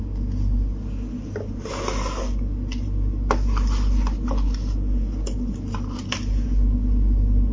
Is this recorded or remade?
recorded